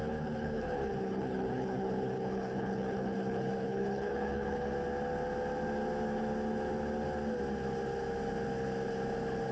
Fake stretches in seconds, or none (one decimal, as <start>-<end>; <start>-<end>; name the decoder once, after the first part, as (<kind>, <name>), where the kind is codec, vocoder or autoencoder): 0.0-4.7 (codec, HILCodec)